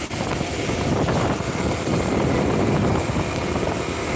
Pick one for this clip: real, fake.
real